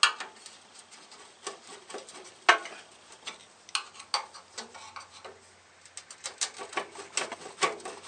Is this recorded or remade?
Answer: recorded